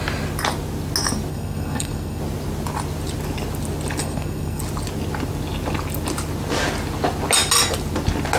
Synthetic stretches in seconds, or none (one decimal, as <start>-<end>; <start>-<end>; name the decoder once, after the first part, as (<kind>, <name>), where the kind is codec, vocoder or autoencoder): 1.3-2.2 (codec, SNAC); 4.0-4.6